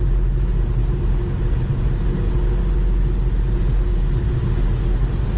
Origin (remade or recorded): recorded